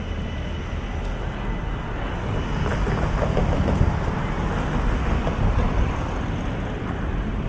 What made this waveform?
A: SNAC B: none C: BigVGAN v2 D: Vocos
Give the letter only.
B